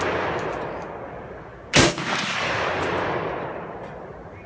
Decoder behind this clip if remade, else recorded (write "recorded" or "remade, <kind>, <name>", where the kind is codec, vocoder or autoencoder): recorded